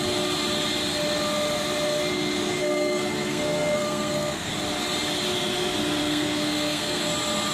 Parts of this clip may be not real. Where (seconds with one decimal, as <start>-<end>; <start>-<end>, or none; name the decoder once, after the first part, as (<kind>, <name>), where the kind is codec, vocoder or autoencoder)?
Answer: 2.6-4.5 (codec, SNAC); 6.0-7.0